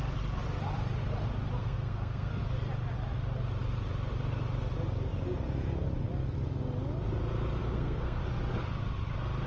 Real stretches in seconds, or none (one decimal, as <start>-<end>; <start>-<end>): 0.0-1.6; 2.3-7.6; 8.2-9.5